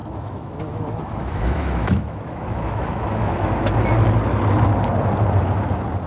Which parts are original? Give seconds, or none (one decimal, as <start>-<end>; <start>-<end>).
3.7-6.1